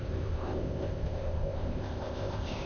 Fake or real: fake